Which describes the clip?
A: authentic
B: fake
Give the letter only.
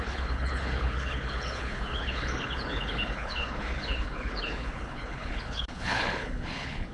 B